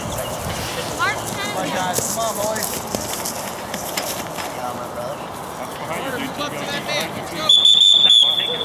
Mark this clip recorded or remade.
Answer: recorded